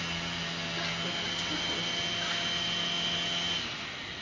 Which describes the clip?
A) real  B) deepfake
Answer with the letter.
A